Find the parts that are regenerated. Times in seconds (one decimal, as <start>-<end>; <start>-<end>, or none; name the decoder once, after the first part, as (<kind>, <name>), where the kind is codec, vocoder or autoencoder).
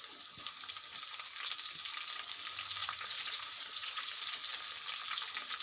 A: 2.8-4.0 (vocoder, Vocos)